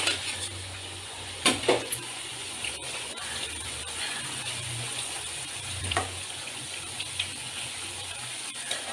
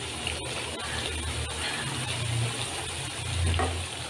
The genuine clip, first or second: second